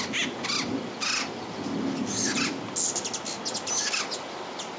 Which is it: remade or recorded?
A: recorded